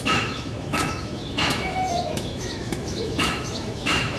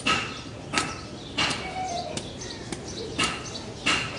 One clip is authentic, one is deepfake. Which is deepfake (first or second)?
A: first